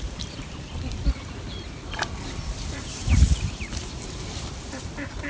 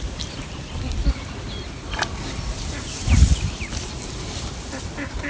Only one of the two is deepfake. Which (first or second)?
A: first